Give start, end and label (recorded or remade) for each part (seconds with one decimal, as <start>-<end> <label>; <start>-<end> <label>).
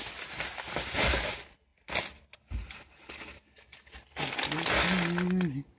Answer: 0.0-5.8 recorded